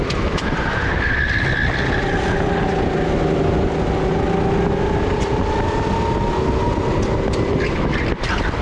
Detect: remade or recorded recorded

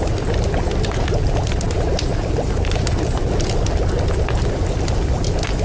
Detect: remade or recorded recorded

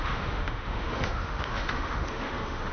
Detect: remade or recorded remade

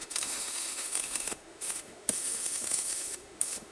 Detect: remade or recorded remade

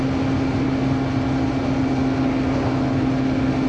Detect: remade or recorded recorded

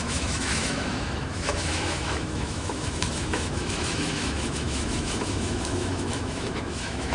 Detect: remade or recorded remade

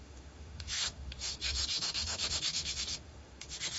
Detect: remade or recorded remade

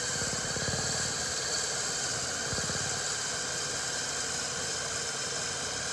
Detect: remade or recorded recorded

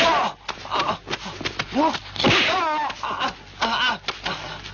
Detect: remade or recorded recorded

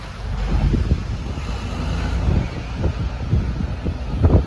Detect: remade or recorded recorded